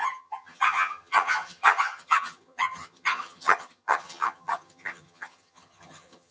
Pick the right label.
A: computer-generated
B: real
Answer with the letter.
A